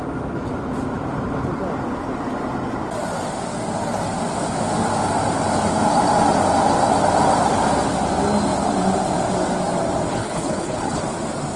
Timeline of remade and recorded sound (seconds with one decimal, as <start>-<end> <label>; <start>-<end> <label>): 0.0-10.1 recorded; 10.1-11.0 remade; 11.0-11.6 recorded